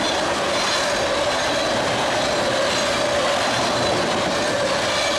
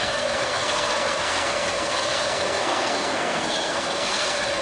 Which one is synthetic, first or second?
second